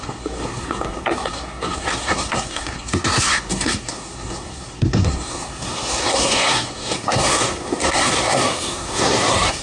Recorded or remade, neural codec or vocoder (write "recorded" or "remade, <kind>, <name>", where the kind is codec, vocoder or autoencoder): remade, codec, SNAC